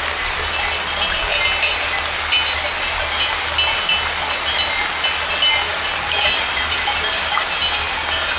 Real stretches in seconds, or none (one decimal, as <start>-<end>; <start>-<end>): 0.0-5.7; 7.2-8.4